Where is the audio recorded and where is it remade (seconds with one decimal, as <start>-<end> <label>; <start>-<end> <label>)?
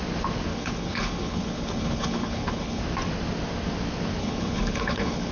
0.0-0.5 recorded; 0.5-2.8 remade; 2.8-4.2 recorded; 4.2-5.3 remade